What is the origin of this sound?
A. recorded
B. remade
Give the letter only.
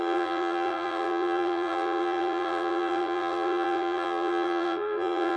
B